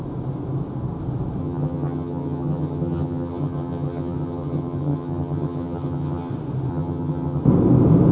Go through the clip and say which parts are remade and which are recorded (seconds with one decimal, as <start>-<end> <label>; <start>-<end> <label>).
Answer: 0.0-1.4 recorded; 1.4-6.3 remade; 6.3-6.7 recorded; 6.7-7.4 remade; 7.4-8.1 recorded